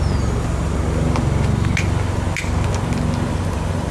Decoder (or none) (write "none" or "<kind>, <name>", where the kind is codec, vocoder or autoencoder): none